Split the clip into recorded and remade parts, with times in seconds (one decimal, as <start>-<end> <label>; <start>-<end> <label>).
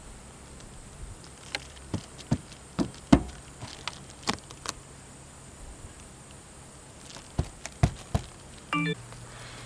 0.0-3.3 remade; 3.3-9.7 recorded